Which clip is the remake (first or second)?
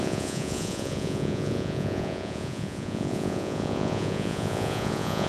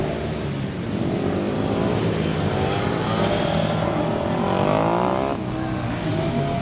first